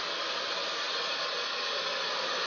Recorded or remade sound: recorded